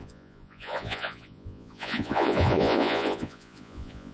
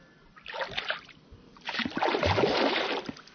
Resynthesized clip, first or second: first